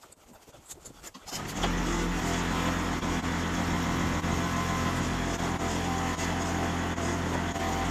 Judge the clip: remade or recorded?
recorded